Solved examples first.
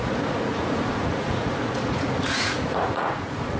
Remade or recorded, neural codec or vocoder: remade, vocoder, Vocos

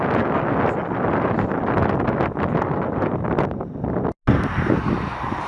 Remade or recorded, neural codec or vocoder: recorded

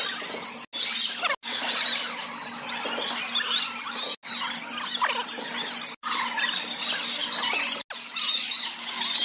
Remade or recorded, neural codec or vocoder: recorded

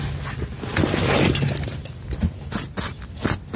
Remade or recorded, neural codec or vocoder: recorded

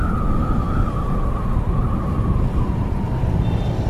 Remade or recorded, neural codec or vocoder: recorded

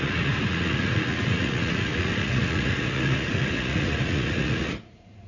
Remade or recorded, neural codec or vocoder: remade, vocoder, Vocos